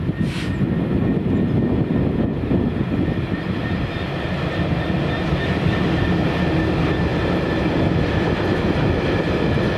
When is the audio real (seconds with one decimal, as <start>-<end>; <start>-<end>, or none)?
0.0-7.1; 7.6-9.8